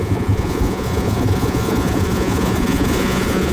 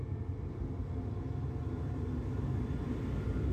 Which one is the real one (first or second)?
second